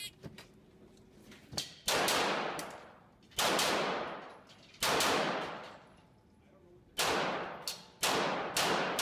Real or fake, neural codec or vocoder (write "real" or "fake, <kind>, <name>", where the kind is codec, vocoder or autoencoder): real